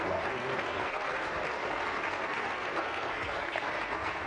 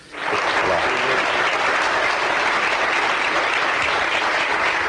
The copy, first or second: first